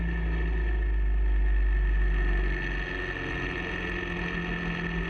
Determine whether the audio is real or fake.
real